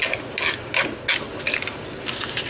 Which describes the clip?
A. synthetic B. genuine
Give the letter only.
B